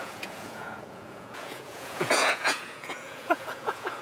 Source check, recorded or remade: remade